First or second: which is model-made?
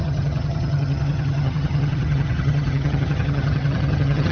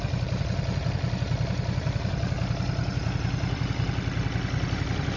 first